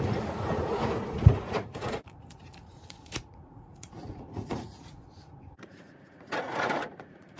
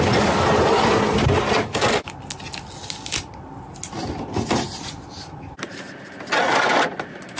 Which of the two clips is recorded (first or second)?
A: second